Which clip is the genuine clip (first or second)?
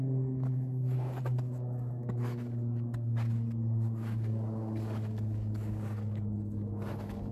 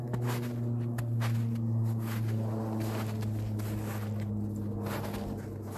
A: second